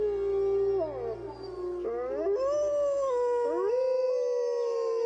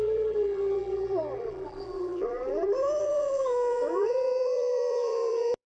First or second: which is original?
first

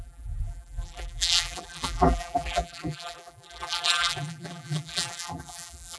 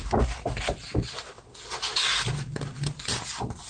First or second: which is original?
second